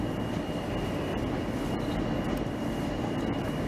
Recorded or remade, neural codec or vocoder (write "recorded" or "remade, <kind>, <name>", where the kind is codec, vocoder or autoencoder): recorded